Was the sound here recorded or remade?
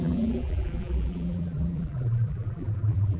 remade